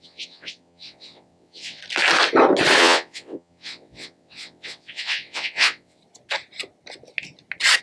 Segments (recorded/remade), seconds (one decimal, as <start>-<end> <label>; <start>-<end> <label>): 0.0-1.8 remade; 1.8-2.8 recorded; 2.8-6.0 remade; 6.0-7.8 recorded